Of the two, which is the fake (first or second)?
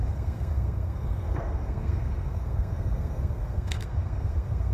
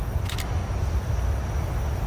first